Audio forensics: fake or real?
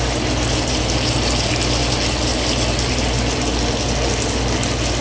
real